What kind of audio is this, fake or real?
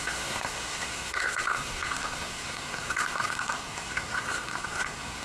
fake